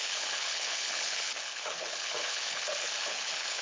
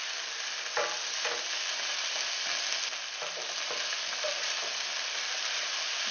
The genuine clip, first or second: second